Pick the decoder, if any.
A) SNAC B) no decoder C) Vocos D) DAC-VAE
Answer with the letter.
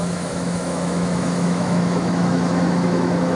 D